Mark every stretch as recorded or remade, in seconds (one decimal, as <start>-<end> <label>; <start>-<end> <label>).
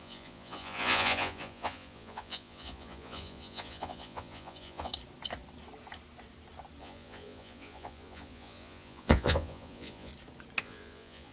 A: 0.0-4.9 remade; 4.9-6.8 recorded; 6.8-10.1 remade; 10.1-10.6 recorded; 10.6-11.3 remade